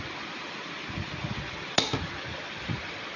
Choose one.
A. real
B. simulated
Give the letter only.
A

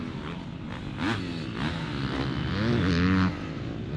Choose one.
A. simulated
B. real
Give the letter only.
B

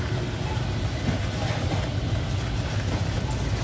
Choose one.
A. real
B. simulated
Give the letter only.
A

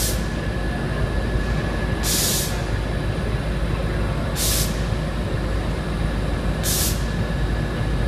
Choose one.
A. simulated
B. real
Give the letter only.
B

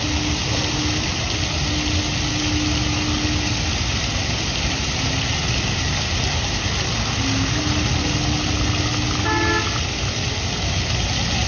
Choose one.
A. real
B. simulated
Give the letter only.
A